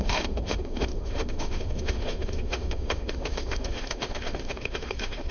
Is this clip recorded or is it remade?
remade